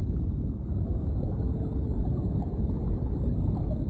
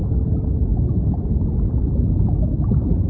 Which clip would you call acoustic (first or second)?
second